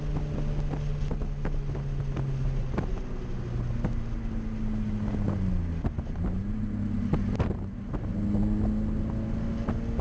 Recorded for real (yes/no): yes